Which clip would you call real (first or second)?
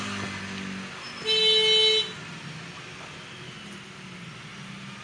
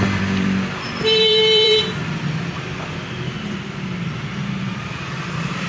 first